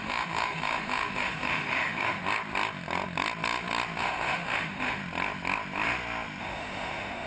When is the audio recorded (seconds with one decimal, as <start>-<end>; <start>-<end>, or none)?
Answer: 2.2-4.0; 5.0-6.4